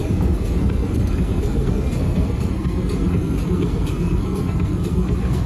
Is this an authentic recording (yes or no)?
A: no